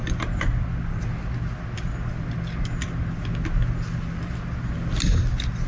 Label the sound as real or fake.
real